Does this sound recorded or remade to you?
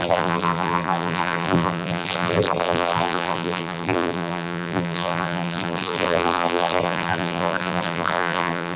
remade